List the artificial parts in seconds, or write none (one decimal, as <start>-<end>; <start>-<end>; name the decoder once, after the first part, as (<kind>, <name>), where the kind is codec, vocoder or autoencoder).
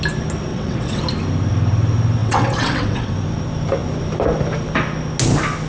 0.5-1.0 (vocoder, WaveNeXt); 2.2-3.1